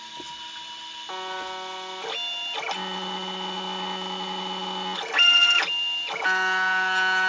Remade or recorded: recorded